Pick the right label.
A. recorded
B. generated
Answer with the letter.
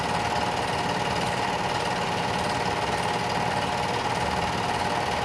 A